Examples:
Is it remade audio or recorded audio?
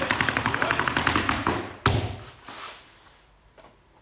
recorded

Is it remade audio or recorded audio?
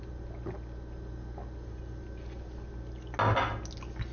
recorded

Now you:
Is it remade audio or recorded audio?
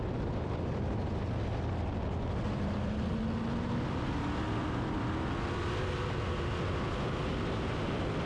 recorded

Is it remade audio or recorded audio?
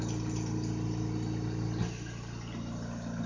recorded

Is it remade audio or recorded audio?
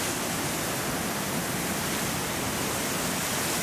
recorded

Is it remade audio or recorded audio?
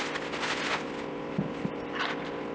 recorded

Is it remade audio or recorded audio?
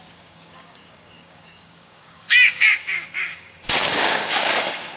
remade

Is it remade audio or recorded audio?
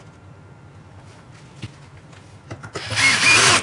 recorded